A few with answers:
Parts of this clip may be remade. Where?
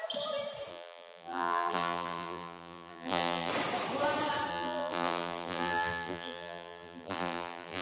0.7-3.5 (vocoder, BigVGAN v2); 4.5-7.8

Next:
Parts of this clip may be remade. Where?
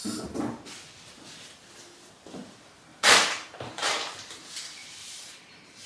2.9-4.3 (vocoder, BigVGAN v2); 4.8-5.9